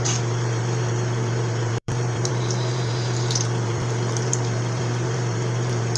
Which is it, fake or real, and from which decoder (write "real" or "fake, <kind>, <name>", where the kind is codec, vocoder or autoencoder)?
fake, vocoder, BigVGAN v2